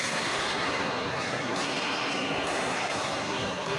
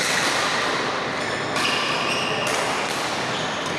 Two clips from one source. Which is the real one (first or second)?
second